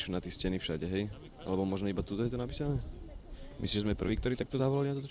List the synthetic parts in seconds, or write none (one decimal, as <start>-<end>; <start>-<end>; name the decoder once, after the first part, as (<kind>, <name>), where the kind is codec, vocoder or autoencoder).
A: 3.6-4.6 (vocoder, Vocos)